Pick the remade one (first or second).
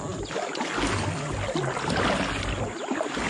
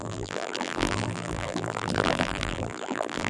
second